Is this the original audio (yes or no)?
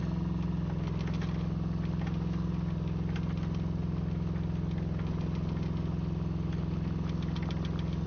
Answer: yes